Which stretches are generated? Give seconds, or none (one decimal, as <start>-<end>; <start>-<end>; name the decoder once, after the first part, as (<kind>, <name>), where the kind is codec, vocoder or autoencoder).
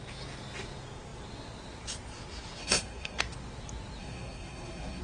2.6-3.2 (codec, SNAC); 4.0-5.0